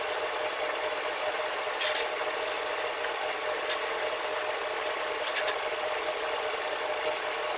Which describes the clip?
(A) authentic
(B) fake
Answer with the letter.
A